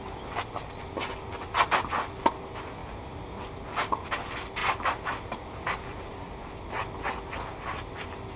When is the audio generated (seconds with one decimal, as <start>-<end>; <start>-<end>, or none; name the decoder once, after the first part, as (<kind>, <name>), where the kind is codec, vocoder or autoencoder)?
4.6-6.4 (vocoder, BigVGAN v2)